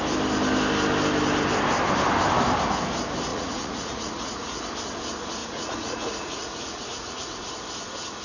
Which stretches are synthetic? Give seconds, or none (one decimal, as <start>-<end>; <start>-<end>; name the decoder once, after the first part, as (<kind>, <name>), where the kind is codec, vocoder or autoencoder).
3.3-4.6 (vocoder, Vocos); 5.4-7.5